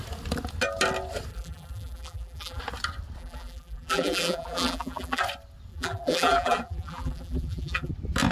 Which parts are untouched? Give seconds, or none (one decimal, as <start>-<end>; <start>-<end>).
0.0-1.3; 2.6-3.2; 5.2-5.7; 7.9-8.3